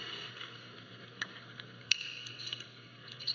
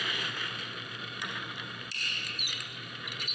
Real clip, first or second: second